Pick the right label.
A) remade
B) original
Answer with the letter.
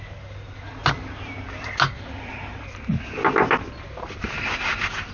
B